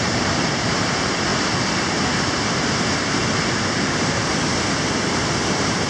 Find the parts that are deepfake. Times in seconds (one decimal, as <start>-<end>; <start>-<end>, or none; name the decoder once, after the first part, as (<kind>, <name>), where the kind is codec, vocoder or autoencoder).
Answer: 0.0-1.3 (vocoder, BigVGAN v2); 4.8-5.9

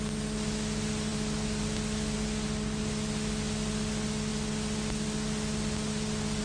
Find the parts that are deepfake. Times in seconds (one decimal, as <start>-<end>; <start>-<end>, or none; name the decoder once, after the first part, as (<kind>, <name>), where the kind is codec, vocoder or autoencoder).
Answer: none

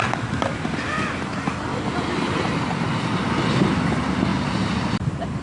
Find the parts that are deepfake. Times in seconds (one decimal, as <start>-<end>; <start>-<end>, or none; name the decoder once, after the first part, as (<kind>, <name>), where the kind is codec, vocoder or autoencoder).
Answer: 1.7-2.9 (vocoder, BigVGAN v2); 4.3-5.4

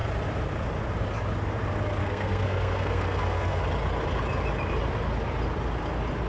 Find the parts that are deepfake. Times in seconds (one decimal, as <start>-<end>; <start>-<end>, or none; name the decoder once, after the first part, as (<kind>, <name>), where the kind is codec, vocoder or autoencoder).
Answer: 2.0-3.6 (codec, SNAC)

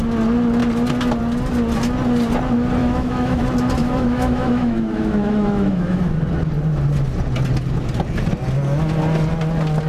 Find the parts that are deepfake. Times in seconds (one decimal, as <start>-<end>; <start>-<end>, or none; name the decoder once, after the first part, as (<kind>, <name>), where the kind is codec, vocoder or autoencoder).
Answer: 2.8-3.4 (autoencoder, DAC-VAE); 3.8-6.0